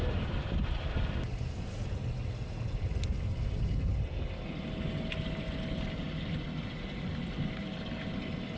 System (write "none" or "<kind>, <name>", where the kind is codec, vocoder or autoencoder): none